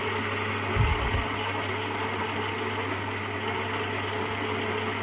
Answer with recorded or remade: recorded